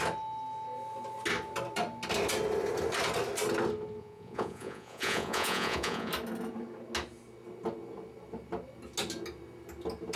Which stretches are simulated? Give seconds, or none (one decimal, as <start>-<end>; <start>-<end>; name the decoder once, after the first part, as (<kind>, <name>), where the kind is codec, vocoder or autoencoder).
4.0-6.1 (vocoder, Vocos)